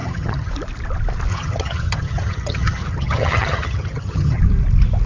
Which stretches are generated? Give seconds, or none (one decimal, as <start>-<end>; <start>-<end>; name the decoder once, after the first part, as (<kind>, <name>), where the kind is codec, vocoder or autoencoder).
0.0-0.5 (vocoder, HiFi-GAN); 1.3-4.4